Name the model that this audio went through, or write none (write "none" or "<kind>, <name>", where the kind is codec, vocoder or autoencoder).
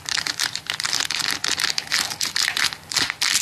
none